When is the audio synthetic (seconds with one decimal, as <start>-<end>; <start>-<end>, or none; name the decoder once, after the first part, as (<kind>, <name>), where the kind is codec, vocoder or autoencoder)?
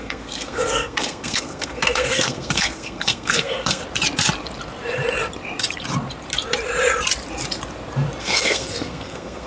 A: 0.0-3.8 (codec, SNAC); 8.2-9.5